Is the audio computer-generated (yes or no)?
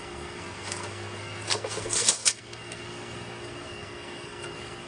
yes